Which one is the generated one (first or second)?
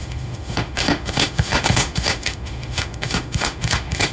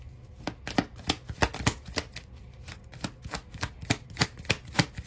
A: first